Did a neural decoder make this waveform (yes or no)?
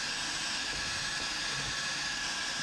no